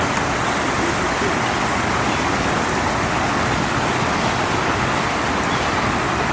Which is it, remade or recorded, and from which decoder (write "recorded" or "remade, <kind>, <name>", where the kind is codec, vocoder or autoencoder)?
recorded